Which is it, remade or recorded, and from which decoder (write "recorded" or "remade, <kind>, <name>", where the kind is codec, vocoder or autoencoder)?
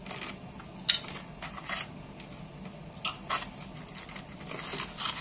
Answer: recorded